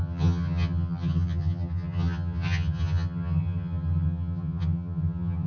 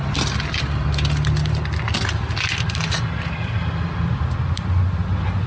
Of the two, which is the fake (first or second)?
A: first